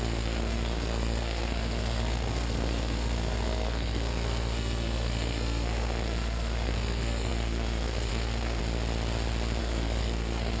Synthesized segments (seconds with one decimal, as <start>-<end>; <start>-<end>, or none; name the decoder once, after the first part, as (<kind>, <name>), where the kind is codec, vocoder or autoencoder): 0.0-8.6 (codec, SNAC); 9.6-10.6